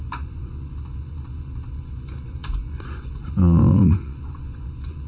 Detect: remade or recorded remade